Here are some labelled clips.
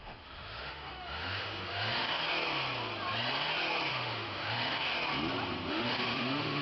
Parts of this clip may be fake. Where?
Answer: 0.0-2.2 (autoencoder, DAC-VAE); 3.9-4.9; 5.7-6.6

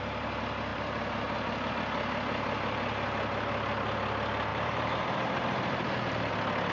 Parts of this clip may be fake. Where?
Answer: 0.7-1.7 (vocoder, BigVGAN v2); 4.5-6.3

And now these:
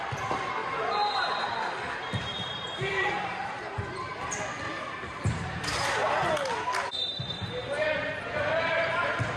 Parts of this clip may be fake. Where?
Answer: 0.0-0.6 (vocoder, BigVGAN v2); 1.4-4.7; 7.0-9.4